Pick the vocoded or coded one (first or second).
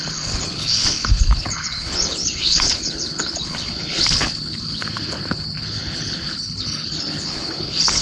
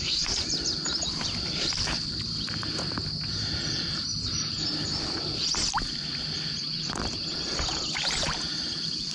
first